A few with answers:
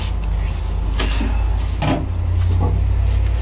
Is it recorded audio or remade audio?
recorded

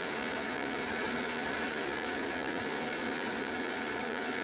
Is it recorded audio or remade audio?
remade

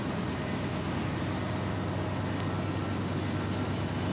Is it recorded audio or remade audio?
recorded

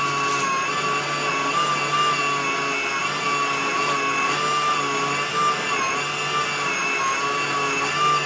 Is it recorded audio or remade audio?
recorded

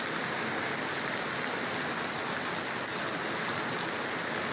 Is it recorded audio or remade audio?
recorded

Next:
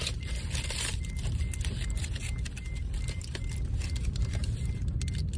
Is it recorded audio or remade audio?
recorded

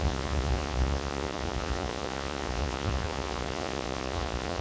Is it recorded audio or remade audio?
remade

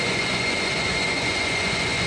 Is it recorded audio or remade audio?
remade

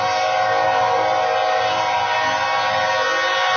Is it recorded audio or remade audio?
recorded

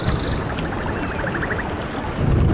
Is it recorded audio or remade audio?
recorded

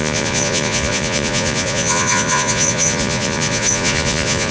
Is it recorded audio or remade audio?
remade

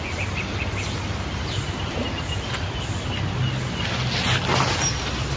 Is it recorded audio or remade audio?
recorded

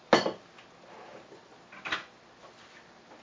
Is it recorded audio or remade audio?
recorded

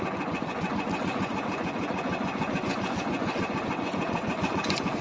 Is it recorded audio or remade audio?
remade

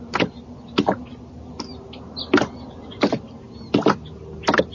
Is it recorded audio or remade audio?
recorded